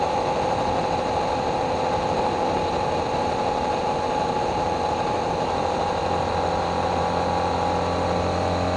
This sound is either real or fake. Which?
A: real